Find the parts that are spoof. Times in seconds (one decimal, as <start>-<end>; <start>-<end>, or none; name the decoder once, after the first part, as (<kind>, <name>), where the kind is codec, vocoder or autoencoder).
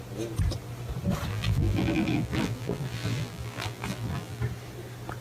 1.3-4.4 (vocoder, BigVGAN v2)